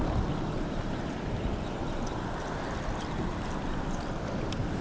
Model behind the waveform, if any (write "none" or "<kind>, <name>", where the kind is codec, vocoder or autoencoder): none